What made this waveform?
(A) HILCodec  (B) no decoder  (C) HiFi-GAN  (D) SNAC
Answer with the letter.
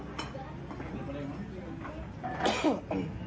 B